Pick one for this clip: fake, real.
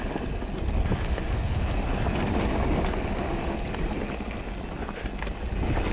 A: real